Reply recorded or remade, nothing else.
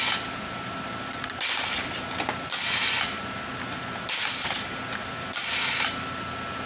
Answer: recorded